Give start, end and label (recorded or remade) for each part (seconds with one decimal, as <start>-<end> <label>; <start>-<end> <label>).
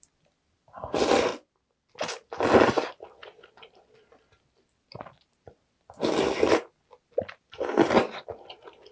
0.0-8.9 recorded